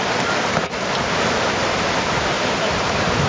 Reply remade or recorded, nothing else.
recorded